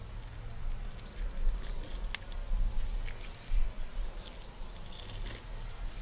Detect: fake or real real